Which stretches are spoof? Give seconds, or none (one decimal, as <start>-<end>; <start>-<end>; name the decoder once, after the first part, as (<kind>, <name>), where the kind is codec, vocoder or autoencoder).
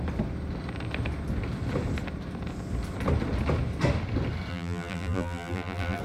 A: 4.5-6.0 (vocoder, BigVGAN v2)